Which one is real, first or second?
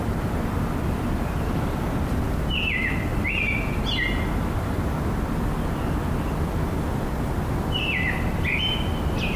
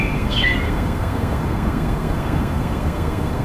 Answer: first